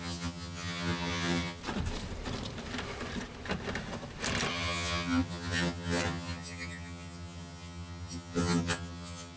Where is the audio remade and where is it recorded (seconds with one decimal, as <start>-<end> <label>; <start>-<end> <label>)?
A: 0.0-1.6 remade; 1.6-4.5 recorded; 4.5-9.4 remade